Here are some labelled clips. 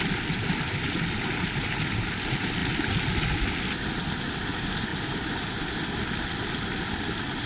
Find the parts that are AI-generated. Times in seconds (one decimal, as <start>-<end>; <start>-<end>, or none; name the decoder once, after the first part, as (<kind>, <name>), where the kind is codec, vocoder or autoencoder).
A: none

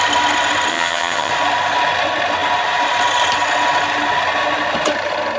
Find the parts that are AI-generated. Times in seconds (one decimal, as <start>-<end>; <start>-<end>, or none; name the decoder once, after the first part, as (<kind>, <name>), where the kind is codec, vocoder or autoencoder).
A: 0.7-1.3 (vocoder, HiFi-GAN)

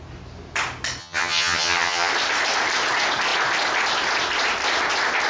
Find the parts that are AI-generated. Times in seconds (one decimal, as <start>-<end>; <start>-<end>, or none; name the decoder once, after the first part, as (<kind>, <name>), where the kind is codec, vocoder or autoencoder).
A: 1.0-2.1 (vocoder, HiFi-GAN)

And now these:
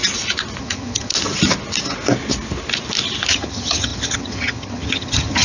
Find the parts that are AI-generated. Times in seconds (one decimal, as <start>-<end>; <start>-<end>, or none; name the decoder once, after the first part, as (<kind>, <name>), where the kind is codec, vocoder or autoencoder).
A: 0.6-1.1 (vocoder, HiFi-GAN); 3.3-5.4

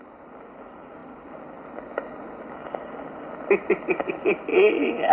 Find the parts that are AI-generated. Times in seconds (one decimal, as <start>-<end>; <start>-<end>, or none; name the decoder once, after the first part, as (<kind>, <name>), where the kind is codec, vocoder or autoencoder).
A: none